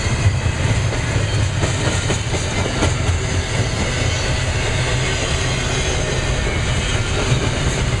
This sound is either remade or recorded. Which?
recorded